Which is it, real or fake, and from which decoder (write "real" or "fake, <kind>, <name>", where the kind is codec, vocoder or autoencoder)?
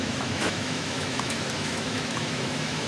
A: fake, autoencoder, DAC-VAE